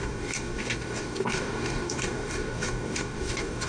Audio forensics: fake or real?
fake